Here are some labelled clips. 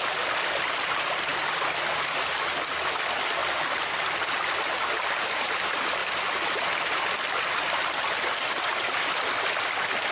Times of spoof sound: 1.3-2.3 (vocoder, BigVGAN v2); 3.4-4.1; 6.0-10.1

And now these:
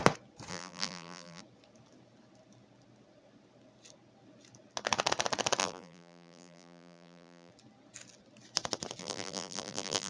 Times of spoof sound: 0.5-1.4 (vocoder, BigVGAN v2); 5.6-7.5; 9.0-10.1

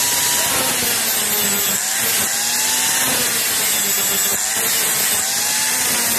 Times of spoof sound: none

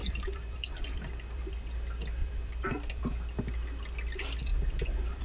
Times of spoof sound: 0.0-1.5 (vocoder, BigVGAN v2); 2.2-3.1

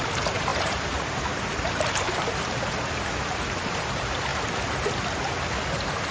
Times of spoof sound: 0.0-4.3 (vocoder, BigVGAN v2)

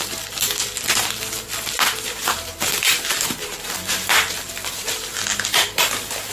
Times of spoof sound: 2.2-6.3 (vocoder, BigVGAN v2)